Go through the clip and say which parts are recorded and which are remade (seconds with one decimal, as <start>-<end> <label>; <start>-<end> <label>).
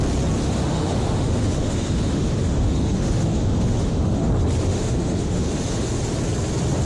0.0-0.4 recorded; 0.4-4.3 remade; 4.3-4.7 recorded; 4.7-6.0 remade; 6.0-6.8 recorded